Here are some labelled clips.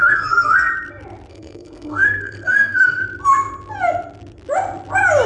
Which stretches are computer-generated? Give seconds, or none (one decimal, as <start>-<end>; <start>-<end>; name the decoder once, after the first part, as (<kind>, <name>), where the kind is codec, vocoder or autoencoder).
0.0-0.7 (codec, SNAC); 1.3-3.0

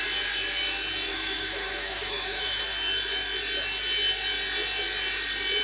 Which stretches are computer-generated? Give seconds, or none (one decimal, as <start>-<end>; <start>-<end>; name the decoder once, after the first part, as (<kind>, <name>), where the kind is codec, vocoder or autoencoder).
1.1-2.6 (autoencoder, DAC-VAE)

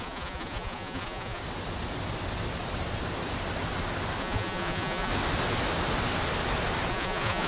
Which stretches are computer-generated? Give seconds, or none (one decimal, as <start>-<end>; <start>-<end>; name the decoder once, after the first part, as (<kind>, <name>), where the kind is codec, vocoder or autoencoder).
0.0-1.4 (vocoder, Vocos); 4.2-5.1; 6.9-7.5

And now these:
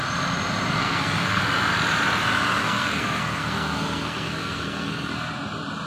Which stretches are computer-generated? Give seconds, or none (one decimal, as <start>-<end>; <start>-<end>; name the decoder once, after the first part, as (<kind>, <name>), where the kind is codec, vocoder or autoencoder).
0.8-1.4 (codec, SNAC); 2.6-5.1

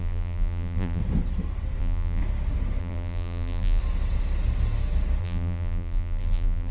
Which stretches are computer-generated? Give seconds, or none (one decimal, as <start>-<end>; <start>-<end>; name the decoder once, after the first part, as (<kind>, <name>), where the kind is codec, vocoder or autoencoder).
0.0-1.0 (vocoder, BigVGAN v2); 1.8-2.2; 2.8-3.8; 5.2-6.7

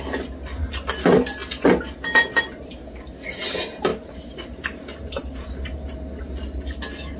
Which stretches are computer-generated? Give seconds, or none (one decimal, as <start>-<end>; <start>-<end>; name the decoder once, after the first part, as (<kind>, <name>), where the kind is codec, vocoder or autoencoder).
3.9-6.2 (vocoder, BigVGAN v2)

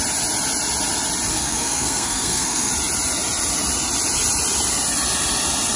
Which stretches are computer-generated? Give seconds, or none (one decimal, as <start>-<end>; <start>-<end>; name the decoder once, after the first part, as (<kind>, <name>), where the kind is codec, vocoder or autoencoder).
1.3-2.7 (codec, SNAC)